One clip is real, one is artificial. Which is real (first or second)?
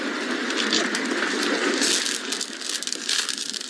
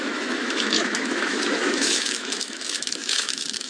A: first